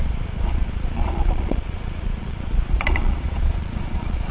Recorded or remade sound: remade